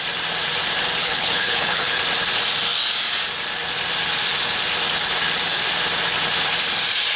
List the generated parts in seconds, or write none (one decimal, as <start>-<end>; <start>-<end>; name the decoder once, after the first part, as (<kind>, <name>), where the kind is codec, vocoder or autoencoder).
1.0-2.0 (codec, HILCodec)